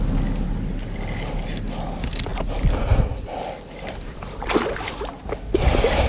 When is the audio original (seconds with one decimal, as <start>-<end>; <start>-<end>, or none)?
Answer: 0.0-6.1